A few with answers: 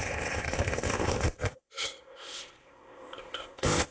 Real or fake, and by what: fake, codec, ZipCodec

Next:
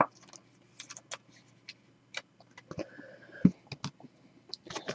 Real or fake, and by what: real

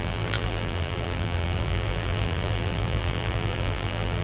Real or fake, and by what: fake, vocoder, BigVGAN v2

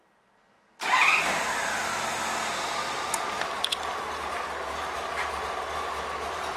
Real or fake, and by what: real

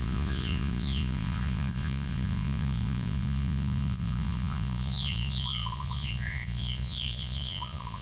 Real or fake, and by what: fake, vocoder, Vocos